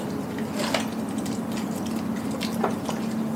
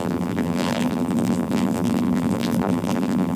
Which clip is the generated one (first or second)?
second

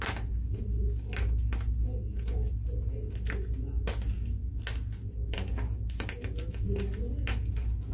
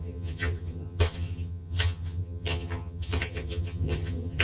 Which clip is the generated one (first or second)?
second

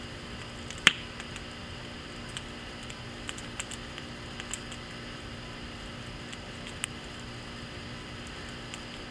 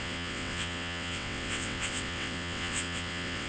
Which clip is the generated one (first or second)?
second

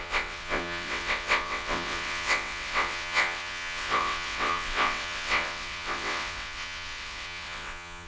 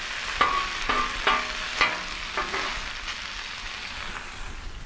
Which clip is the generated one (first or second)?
first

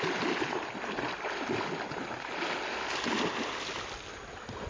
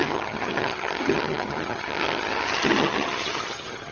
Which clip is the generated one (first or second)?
second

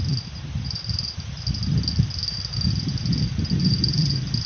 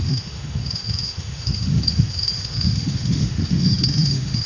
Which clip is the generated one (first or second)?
second